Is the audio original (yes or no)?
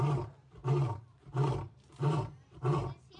no